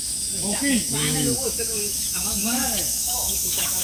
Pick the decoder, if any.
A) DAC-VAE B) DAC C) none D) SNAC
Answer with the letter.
A